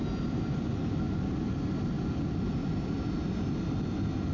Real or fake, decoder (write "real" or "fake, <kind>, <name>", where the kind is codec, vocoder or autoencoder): real